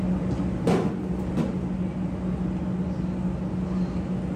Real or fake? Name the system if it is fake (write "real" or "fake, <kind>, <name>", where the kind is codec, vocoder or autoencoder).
real